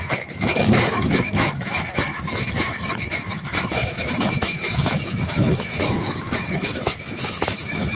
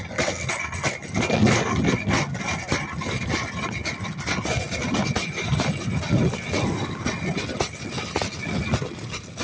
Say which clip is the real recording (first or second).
second